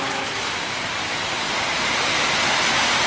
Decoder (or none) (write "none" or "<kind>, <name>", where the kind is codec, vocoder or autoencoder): none